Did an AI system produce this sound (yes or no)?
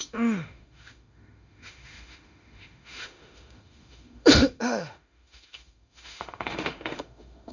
yes